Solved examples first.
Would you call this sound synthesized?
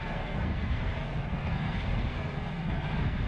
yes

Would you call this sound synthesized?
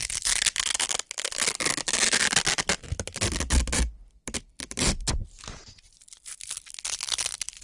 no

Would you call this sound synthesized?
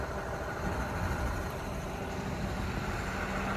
no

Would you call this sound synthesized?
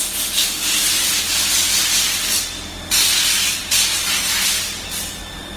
no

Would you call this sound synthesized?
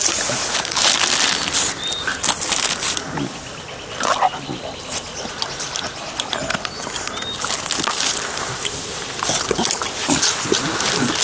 no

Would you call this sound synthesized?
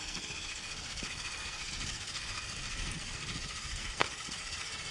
yes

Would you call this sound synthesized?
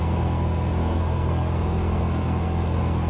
yes